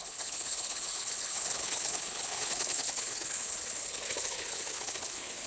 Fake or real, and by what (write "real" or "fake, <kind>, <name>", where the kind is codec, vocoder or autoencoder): fake, codec, HILCodec